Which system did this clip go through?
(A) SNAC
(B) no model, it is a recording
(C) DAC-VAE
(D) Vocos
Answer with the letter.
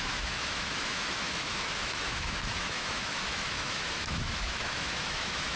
C